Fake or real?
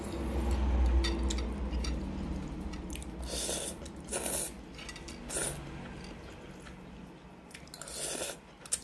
real